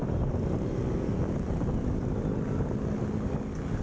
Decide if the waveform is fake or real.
real